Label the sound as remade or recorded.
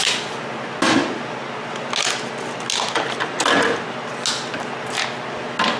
recorded